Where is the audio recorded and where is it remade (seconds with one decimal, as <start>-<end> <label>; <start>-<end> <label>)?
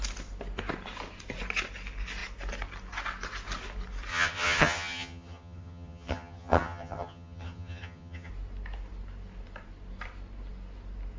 0.0-4.1 recorded; 4.1-8.3 remade; 8.3-11.2 recorded